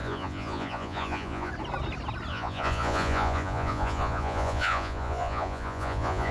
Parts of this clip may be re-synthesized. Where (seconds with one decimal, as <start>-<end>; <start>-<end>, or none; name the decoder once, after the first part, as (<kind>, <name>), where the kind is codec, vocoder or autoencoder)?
0.0-1.5 (vocoder, Vocos); 2.3-6.3